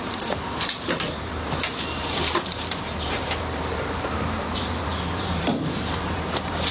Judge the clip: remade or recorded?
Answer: remade